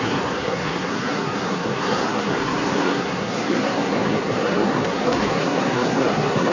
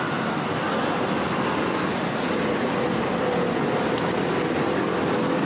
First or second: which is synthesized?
first